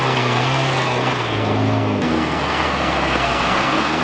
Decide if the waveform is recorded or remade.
remade